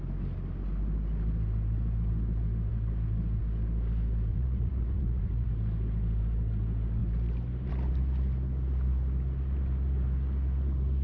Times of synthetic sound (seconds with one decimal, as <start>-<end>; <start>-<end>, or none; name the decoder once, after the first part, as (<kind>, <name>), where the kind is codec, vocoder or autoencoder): 4.3-5.5 (vocoder, Vocos)